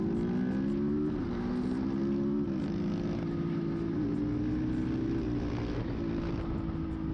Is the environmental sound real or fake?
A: real